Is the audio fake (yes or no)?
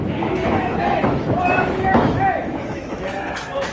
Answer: yes